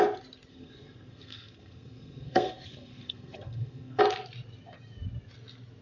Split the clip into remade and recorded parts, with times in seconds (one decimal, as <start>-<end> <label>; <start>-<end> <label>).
0.0-0.5 recorded; 0.5-4.0 remade; 4.0-5.8 recorded